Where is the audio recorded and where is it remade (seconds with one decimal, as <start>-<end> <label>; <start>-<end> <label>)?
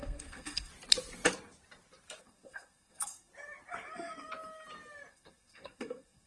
0.0-0.7 remade; 0.7-2.2 recorded; 2.2-3.3 remade; 3.3-5.1 recorded; 5.1-6.3 remade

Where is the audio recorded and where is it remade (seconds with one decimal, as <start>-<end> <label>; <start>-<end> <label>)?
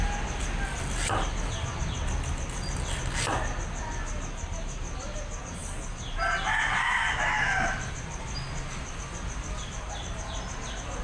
0.0-11.0 recorded